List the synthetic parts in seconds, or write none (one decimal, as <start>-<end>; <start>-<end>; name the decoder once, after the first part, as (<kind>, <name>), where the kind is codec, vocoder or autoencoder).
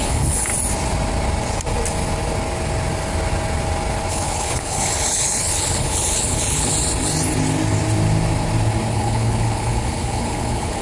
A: 0.0-0.5 (codec, HILCodec); 4.1-6.7; 8.9-10.8